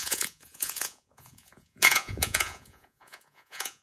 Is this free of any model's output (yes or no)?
no